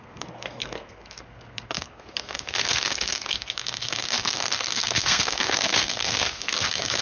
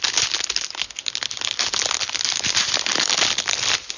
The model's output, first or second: first